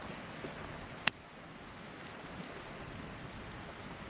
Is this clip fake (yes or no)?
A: no